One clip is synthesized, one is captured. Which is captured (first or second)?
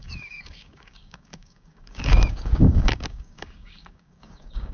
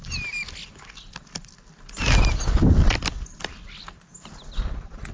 second